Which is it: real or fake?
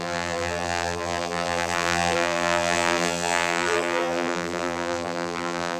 fake